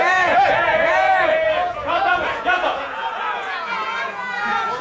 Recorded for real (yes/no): no